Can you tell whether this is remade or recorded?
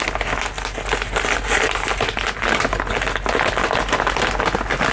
recorded